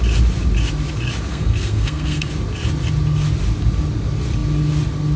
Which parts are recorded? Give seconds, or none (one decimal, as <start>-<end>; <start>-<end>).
0.0-1.3; 2.3-5.2